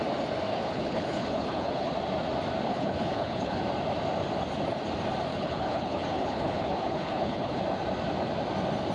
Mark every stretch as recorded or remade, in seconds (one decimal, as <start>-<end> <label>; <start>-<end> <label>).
0.0-0.5 recorded; 0.5-1.9 remade; 1.9-2.7 recorded; 2.7-3.6 remade; 3.6-5.3 recorded; 5.3-7.6 remade; 7.6-8.9 recorded